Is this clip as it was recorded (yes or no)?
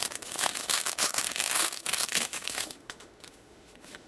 no